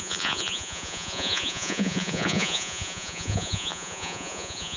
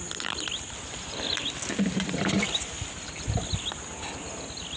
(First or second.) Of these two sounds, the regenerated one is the first